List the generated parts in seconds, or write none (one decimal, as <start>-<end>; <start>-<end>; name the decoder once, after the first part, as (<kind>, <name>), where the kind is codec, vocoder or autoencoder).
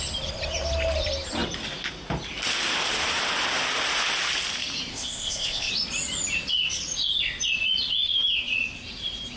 4.9-5.7 (codec, ZipCodec)